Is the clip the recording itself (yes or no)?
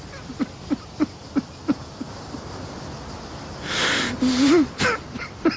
yes